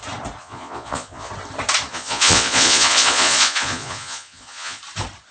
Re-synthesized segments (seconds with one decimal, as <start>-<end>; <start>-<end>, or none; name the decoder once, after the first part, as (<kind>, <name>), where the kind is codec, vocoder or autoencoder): 0.4-1.3 (vocoder, Vocos); 1.9-4.8